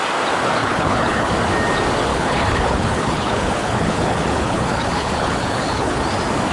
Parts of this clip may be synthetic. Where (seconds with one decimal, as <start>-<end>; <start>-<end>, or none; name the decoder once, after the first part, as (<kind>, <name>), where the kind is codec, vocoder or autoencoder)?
0.6-1.3 (codec, HILCodec); 2.1-6.0